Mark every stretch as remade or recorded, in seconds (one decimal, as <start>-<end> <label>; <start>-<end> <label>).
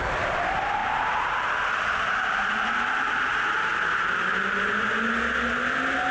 0.0-6.1 recorded